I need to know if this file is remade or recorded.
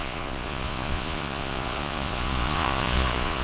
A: remade